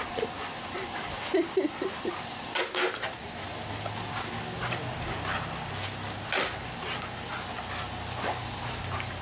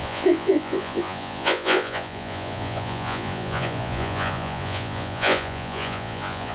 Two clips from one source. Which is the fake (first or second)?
second